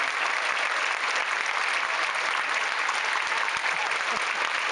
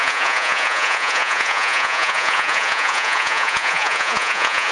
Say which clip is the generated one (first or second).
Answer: second